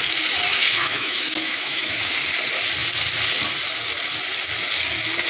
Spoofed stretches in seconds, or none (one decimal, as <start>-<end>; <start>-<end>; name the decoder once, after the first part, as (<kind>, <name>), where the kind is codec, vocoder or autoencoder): 0.5-2.1 (autoencoder, DAC-VAE)